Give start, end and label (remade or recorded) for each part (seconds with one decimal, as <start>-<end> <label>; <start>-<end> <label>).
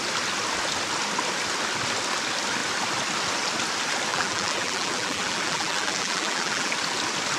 0.0-4.1 recorded; 4.1-6.7 remade; 6.7-7.4 recorded